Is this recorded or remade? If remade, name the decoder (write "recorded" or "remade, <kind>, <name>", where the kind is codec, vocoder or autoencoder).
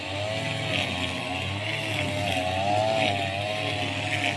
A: recorded